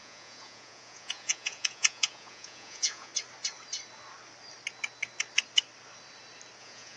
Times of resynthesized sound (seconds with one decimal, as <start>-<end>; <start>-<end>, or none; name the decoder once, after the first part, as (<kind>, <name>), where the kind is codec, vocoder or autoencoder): 0.0-3.1 (vocoder, Vocos); 6.6-7.0